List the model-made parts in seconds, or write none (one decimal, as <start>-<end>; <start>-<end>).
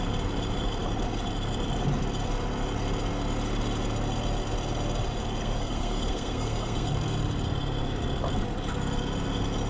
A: 5.4-6.9